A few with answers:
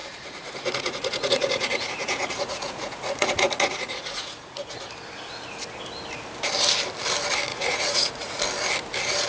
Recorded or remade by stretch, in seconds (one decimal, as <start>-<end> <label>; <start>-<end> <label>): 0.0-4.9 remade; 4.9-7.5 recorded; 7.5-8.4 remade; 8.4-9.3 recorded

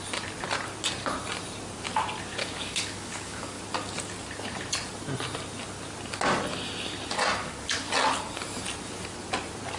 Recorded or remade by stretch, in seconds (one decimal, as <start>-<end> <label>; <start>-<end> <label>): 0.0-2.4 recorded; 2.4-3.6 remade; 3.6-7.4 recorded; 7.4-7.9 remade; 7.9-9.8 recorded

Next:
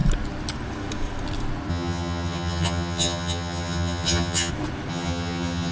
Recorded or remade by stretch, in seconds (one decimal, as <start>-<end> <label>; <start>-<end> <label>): 0.0-1.7 recorded; 1.7-4.5 remade; 4.5-4.9 recorded; 4.9-5.7 remade

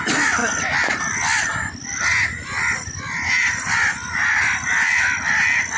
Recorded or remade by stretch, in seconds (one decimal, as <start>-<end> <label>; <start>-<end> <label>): 0.0-0.4 recorded; 0.4-1.0 remade; 1.0-1.5 recorded; 1.5-5.0 remade; 5.0-5.8 recorded

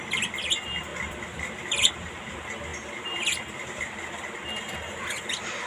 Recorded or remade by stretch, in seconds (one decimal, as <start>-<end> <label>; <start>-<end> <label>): 0.0-0.9 recorded; 0.9-1.9 remade; 1.9-5.7 recorded

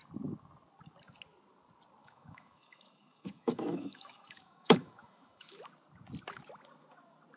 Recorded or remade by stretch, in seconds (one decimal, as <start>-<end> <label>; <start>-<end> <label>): 0.0-2.0 recorded; 2.0-5.6 remade; 5.6-7.4 recorded

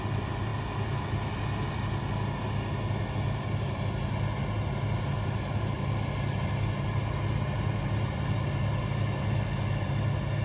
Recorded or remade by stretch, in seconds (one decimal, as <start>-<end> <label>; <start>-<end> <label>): 0.0-10.4 recorded